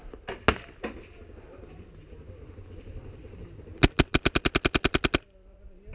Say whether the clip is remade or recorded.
recorded